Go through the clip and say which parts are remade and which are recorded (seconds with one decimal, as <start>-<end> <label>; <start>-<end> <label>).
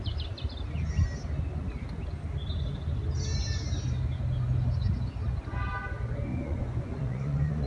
0.0-6.3 recorded; 6.3-7.7 remade